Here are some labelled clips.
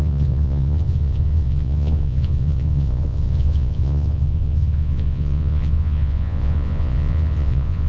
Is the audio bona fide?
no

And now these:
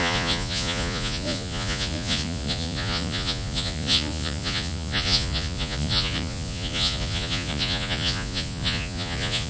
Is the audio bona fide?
no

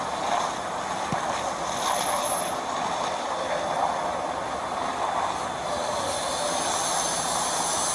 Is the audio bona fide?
yes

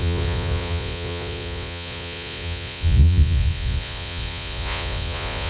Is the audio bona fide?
no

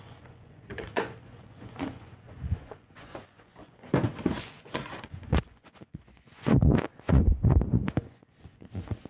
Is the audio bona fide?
no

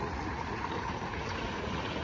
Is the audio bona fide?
no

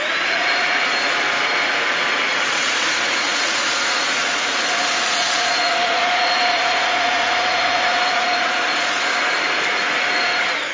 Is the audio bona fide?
no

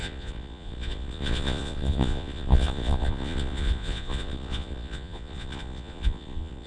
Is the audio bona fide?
no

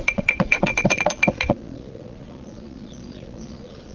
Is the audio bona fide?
no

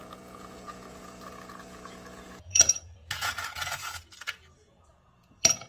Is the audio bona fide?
no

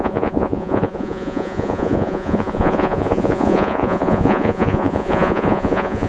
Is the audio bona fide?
no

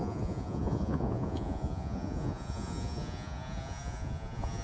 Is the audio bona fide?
no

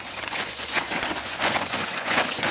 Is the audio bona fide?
no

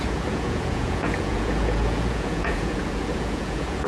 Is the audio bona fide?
no